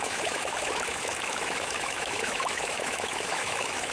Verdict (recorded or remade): remade